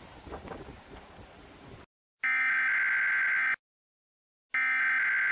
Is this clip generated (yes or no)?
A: no